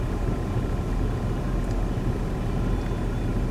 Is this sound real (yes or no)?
yes